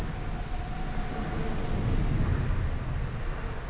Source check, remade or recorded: recorded